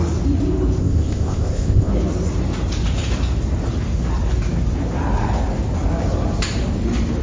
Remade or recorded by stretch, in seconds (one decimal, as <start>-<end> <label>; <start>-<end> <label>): 0.0-0.8 recorded; 0.8-1.9 remade; 1.9-7.2 recorded